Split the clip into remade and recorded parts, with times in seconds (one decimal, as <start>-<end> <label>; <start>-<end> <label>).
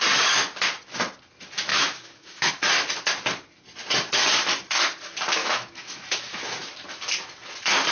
0.0-1.7 recorded; 1.7-2.5 remade; 2.5-5.4 recorded; 5.4-6.7 remade; 6.7-7.9 recorded